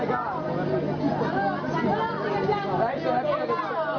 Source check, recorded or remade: recorded